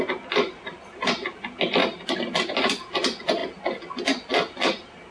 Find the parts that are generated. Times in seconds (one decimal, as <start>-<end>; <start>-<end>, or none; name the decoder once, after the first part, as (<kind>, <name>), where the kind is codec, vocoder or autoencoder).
1.8-2.3 (vocoder, BigVGAN v2)